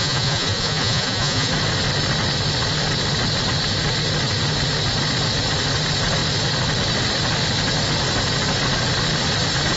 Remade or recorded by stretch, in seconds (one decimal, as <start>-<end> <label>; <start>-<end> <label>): 0.0-1.5 remade; 1.5-9.8 recorded